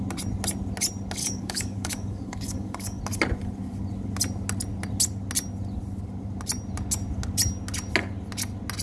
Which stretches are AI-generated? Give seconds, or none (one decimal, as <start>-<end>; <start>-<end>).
1.2-3.0